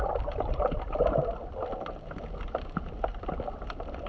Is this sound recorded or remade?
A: recorded